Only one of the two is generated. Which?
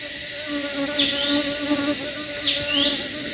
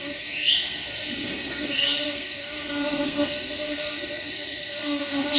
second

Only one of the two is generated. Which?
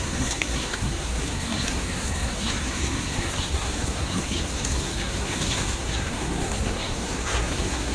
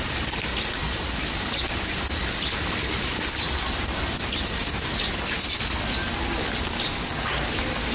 first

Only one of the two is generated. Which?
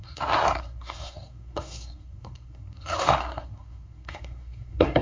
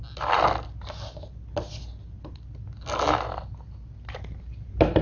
first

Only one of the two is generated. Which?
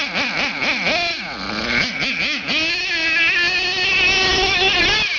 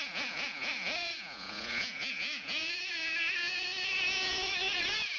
second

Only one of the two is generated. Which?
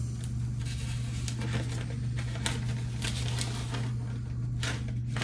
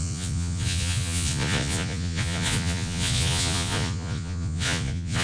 second